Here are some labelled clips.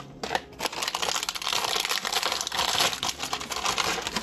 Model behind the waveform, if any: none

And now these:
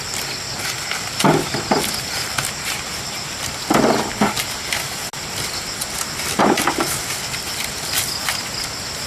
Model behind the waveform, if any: none